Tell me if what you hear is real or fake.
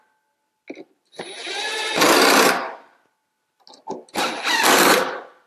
real